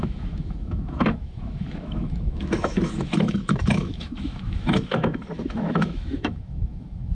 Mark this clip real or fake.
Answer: fake